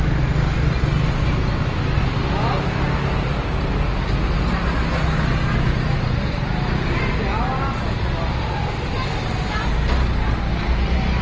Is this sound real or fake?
real